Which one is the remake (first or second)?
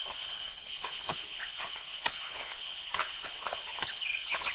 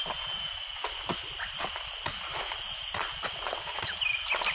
first